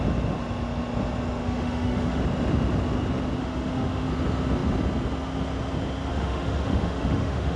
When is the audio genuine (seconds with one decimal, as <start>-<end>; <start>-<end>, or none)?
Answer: 0.0-1.4; 2.2-3.4; 4.1-6.1